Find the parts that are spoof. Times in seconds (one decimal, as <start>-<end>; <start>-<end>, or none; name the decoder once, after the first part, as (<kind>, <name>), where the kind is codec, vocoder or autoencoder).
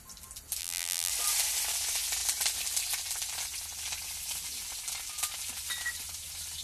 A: 0.6-1.1 (vocoder, BigVGAN v2)